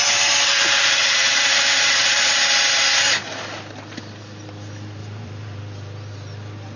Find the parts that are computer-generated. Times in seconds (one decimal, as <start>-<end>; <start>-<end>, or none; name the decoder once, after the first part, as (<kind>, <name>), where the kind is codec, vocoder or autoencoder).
0.8-2.3 (vocoder, BigVGAN v2); 5.0-5.6